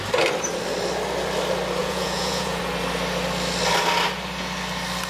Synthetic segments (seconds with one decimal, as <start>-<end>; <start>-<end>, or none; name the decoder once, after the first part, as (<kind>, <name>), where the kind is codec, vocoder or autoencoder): 1.8-2.6 (vocoder, Vocos)